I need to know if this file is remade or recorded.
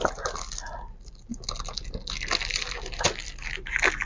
recorded